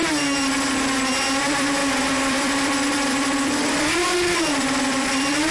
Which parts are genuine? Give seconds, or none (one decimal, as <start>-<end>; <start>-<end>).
0.0-1.4